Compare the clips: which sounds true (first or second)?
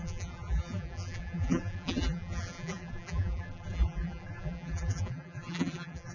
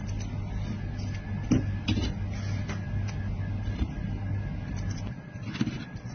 second